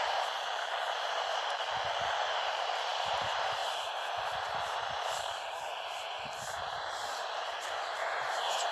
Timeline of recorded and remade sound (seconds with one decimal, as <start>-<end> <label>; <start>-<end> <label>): 0.0-8.7 recorded